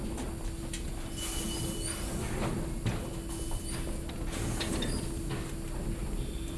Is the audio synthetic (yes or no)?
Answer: no